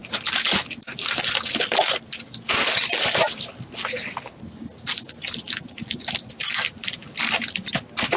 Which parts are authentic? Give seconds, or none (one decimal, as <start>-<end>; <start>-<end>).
0.0-8.2